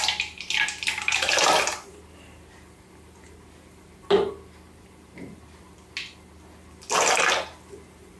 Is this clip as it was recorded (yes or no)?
yes